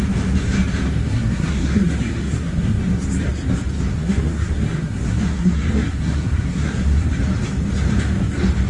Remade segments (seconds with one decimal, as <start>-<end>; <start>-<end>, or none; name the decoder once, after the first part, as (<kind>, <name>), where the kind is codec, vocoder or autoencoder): 1.0-2.8 (codec, SNAC); 3.9-7.1